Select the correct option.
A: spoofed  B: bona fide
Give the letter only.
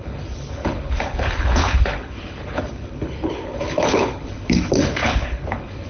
A